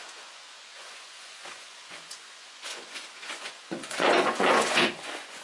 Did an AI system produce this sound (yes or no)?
yes